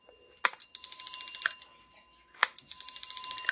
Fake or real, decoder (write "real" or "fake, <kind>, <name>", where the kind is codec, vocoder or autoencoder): real